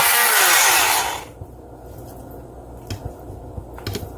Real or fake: real